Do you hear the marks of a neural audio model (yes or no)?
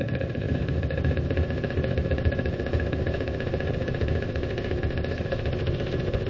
yes